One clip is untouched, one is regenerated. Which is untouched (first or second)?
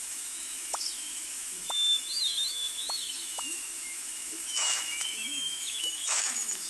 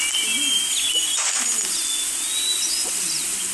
second